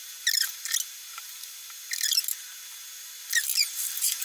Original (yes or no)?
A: yes